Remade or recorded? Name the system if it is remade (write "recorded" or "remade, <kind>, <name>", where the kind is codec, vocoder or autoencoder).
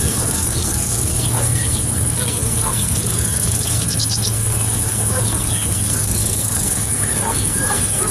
remade, codec, SNAC